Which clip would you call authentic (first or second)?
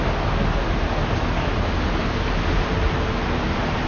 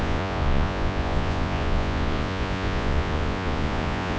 first